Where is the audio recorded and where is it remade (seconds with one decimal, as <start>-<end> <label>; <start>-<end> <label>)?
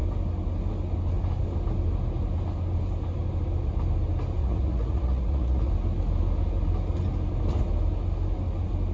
0.0-4.4 recorded; 4.4-5.7 remade; 5.7-8.9 recorded